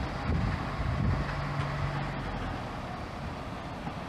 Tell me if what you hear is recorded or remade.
recorded